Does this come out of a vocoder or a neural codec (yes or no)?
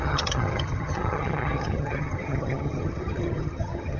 yes